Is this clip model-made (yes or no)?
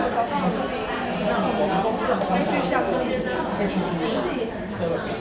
no